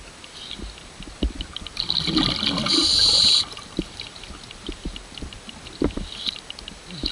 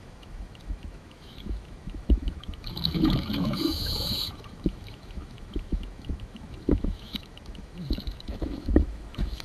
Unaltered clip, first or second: first